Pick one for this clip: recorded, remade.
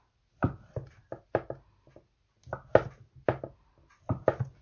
recorded